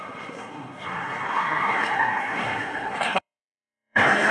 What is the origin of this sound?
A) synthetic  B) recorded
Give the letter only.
A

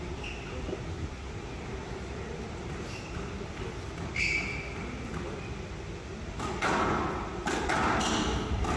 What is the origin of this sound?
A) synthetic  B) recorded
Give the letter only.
B